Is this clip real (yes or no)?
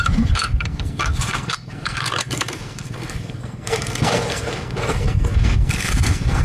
no